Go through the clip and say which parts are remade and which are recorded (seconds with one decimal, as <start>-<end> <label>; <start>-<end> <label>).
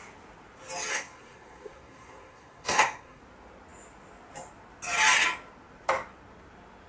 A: 0.0-0.9 recorded; 0.9-3.2 remade; 3.2-6.9 recorded